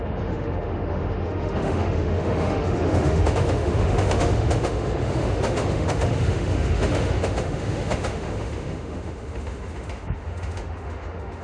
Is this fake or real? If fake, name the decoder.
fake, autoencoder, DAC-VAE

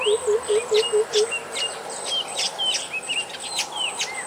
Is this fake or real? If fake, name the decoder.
real